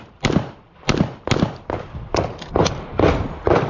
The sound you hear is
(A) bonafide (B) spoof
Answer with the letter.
A